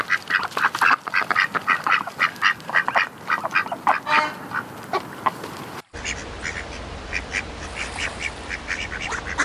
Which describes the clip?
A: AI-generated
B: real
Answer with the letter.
B